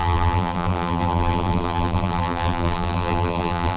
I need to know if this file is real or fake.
fake